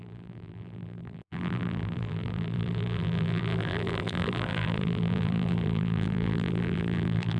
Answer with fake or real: fake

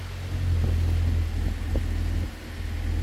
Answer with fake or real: real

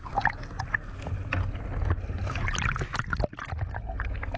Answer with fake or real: real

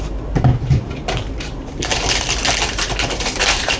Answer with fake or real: fake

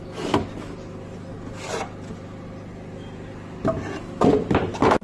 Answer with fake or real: real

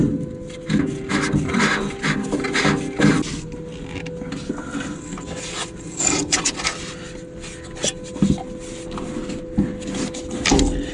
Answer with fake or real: real